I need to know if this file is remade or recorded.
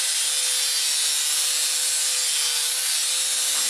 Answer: recorded